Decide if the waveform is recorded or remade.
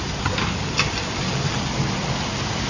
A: recorded